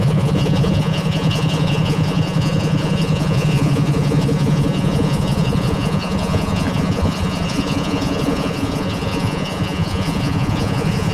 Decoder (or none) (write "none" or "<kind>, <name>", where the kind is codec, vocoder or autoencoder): vocoder, Vocos